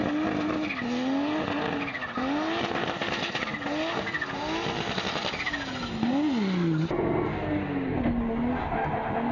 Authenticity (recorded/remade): recorded